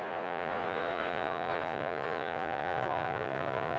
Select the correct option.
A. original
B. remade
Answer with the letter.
B